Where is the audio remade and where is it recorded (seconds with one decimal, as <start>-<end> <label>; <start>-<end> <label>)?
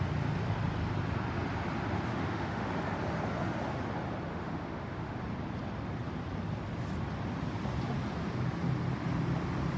0.0-2.1 recorded; 2.1-2.7 remade; 2.7-4.3 recorded; 4.3-5.2 remade; 5.2-9.8 recorded